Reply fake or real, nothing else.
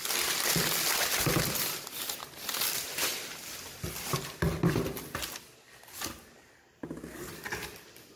real